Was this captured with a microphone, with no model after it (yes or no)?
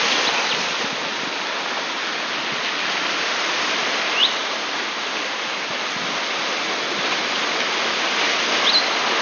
yes